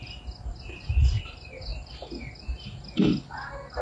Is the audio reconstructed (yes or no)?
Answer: no